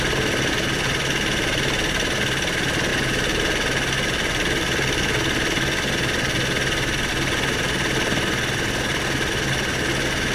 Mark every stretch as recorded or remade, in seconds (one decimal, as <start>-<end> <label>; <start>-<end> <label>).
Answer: 0.0-10.3 recorded